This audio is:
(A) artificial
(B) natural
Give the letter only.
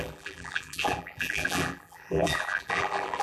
A